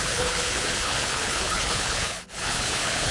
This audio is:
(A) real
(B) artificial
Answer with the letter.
B